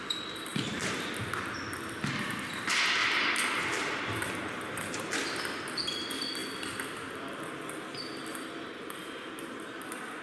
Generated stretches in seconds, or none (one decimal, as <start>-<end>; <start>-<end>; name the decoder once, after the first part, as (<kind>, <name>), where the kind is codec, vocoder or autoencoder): 3.0-4.3 (vocoder, BigVGAN v2)